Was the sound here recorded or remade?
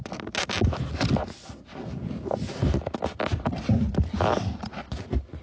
recorded